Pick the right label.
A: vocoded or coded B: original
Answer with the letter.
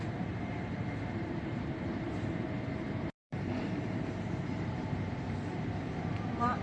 A